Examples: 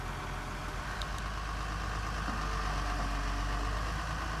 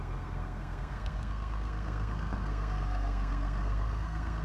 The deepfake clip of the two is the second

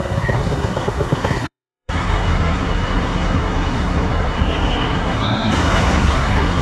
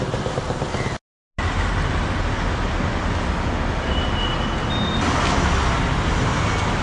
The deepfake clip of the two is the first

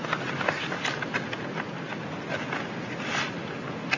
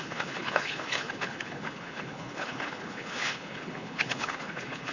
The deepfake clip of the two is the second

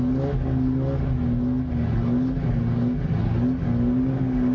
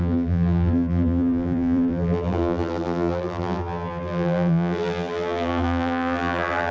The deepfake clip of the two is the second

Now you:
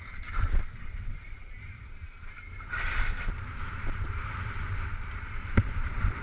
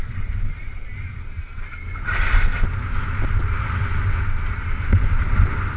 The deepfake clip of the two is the first